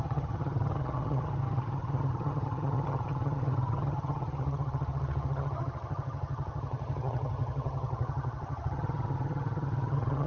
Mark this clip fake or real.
fake